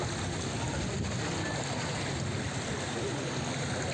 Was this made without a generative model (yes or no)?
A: yes